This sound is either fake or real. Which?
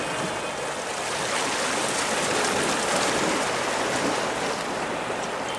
real